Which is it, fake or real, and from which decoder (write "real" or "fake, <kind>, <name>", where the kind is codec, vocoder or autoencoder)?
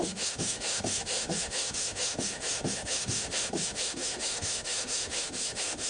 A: fake, autoencoder, DAC-VAE